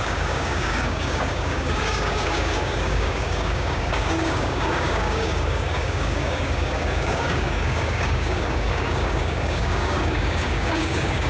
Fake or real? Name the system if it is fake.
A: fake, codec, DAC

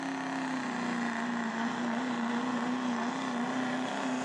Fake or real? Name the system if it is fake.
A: real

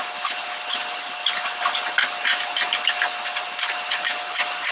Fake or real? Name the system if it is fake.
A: real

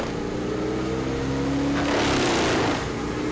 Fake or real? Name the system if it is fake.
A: real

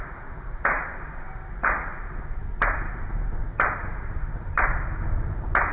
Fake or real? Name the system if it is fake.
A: real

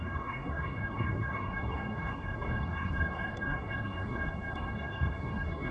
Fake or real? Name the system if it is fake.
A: fake, codec, SNAC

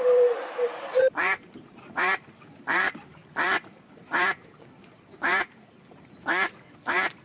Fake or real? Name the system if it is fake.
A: fake, vocoder, BigVGAN v2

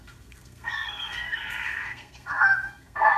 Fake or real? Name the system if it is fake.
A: fake, codec, SNAC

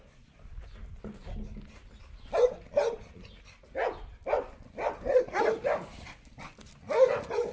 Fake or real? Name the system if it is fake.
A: real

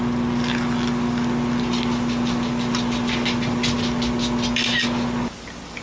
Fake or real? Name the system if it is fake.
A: real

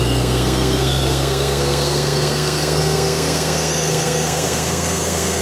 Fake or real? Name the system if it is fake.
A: fake, codec, SNAC